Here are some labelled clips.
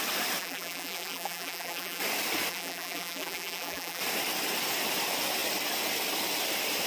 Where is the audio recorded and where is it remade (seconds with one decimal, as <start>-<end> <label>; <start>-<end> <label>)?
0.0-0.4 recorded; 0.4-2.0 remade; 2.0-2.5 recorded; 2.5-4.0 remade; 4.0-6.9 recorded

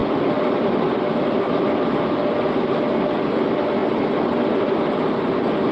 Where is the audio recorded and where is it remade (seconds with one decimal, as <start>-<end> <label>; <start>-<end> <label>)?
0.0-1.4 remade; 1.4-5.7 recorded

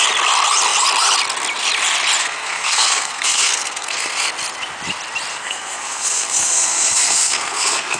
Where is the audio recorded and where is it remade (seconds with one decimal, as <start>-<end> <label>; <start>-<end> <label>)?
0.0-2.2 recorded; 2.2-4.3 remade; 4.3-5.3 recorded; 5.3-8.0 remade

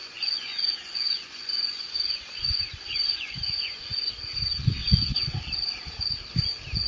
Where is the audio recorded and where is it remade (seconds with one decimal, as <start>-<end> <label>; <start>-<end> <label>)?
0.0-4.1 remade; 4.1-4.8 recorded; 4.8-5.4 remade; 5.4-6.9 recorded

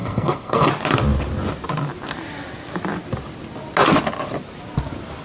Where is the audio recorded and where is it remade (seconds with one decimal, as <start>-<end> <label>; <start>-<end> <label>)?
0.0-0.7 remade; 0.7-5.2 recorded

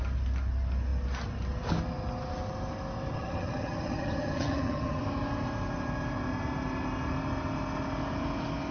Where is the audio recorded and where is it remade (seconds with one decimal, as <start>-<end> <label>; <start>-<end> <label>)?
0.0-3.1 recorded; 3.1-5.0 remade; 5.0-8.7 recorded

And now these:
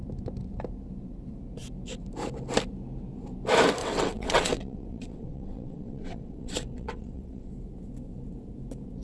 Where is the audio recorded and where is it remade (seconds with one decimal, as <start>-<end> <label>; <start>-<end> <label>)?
0.0-3.8 recorded; 3.8-7.5 remade; 7.5-9.0 recorded

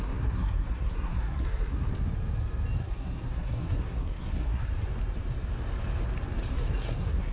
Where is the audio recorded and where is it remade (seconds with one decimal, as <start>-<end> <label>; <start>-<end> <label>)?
0.0-1.9 remade; 1.9-2.8 recorded; 2.8-4.7 remade; 4.7-6.5 recorded; 6.5-7.3 remade